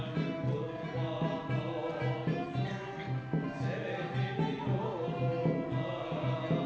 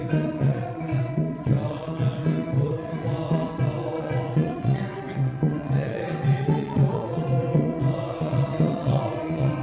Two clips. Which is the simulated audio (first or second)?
second